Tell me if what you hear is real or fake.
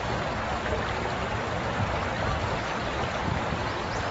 fake